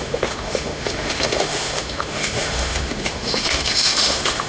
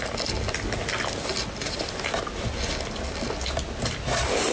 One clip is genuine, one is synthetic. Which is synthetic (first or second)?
first